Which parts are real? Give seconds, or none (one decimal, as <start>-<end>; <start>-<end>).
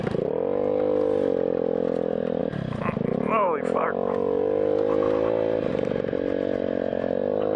0.0-7.6